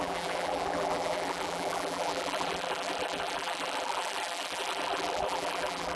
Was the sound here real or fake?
fake